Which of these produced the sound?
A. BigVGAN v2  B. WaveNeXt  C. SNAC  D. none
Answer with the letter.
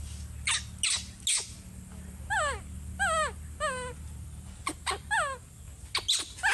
D